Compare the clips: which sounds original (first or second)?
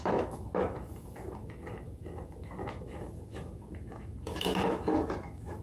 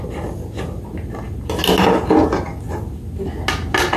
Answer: second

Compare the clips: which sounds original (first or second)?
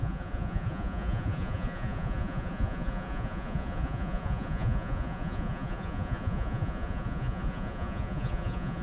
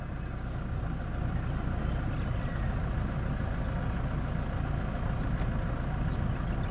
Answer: second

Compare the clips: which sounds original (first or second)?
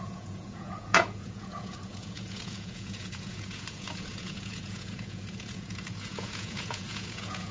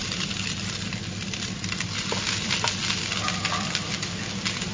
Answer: second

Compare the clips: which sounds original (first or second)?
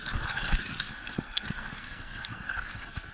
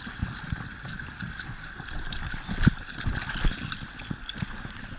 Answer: second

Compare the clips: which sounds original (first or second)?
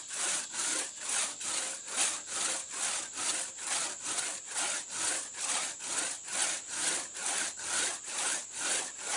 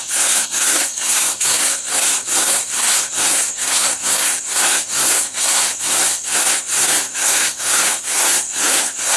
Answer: first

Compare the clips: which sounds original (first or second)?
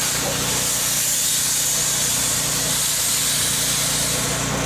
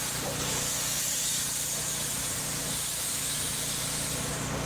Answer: first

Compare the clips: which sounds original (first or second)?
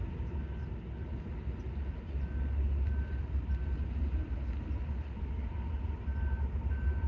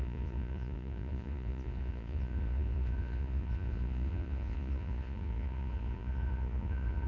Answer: first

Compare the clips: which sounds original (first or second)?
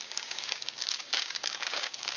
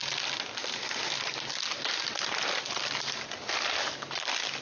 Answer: second